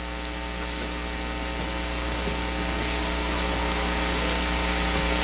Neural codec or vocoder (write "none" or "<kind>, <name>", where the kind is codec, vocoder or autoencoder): none